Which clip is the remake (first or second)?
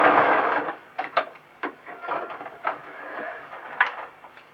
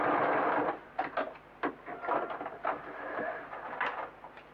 first